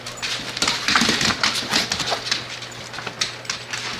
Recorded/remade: recorded